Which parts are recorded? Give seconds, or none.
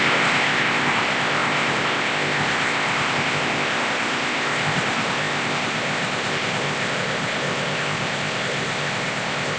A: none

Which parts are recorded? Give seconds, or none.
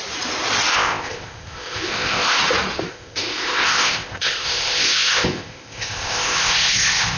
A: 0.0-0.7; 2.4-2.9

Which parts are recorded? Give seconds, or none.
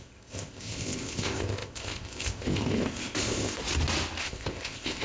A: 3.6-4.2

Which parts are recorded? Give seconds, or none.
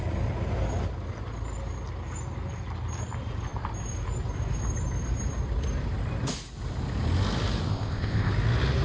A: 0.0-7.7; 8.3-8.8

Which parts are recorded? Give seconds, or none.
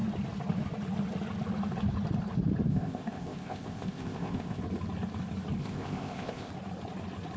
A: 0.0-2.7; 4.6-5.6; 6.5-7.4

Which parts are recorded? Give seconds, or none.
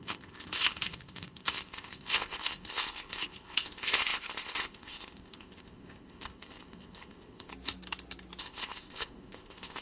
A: 7.5-8.4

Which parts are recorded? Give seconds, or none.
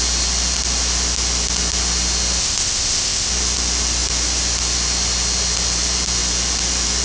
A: 0.0-2.4; 3.3-7.0